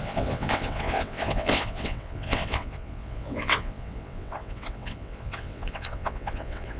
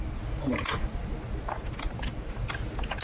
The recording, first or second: second